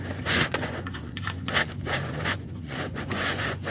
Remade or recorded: remade